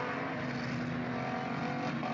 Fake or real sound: real